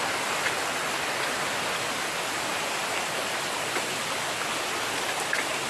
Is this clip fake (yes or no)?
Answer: no